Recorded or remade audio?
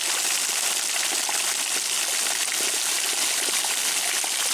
recorded